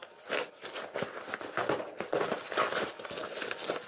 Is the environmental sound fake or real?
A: real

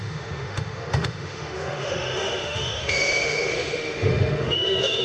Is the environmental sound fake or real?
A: fake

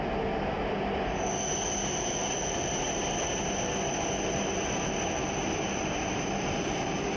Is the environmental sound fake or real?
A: real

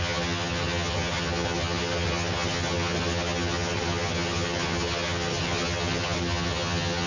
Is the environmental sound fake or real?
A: fake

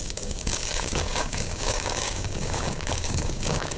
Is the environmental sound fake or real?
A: fake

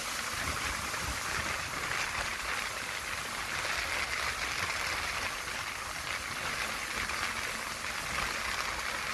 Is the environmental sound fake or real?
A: real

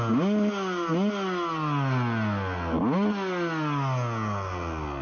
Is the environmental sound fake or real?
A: real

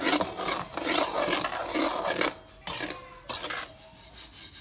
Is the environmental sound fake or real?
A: real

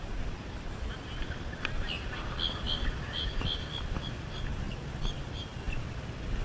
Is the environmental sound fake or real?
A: real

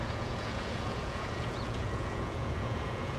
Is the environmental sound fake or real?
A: fake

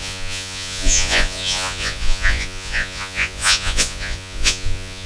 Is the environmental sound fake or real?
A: fake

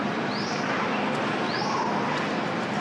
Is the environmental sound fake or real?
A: real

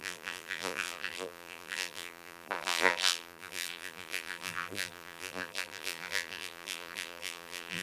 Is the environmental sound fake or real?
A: fake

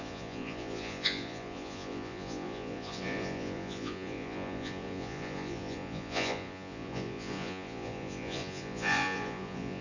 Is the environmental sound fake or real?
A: fake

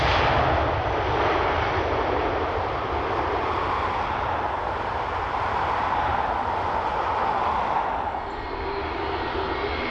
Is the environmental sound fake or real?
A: real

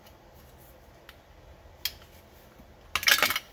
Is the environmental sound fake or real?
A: real